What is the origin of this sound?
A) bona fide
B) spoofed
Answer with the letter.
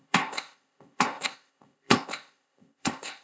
B